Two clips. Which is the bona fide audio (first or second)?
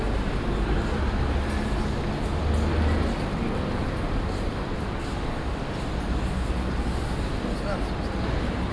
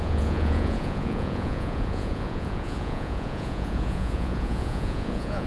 first